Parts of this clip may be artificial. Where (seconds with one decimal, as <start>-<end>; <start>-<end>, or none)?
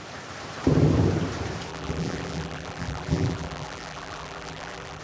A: 1.7-5.0